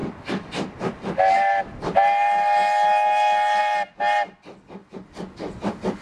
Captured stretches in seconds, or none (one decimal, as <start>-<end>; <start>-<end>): 0.0-6.0